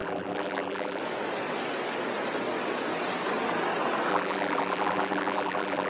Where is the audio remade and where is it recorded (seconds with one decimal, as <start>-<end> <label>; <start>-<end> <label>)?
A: 0.0-1.0 remade; 1.0-4.1 recorded; 4.1-5.9 remade